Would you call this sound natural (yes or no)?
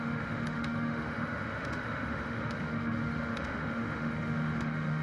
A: no